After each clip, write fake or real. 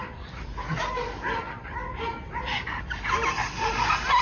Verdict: real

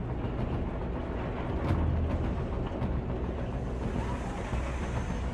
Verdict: real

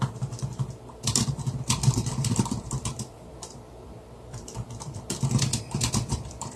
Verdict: fake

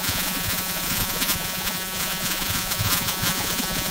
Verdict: fake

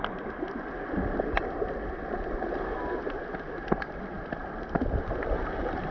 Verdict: real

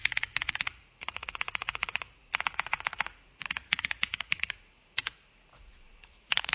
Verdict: fake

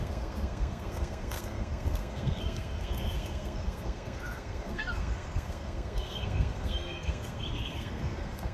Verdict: fake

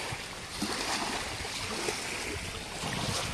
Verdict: real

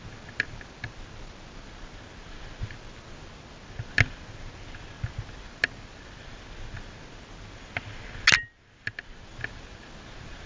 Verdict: real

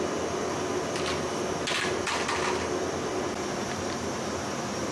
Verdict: real